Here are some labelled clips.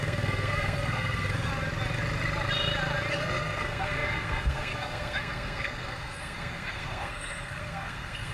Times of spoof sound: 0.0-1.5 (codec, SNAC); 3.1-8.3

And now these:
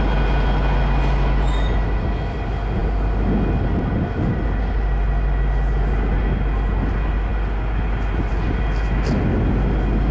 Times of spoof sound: none

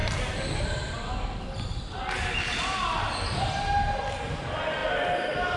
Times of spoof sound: none

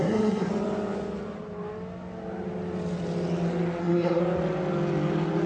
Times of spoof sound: 0.0-0.5 (codec, SNAC); 3.8-4.2

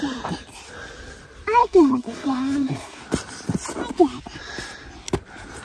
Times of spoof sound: 1.6-3.0 (codec, SNAC)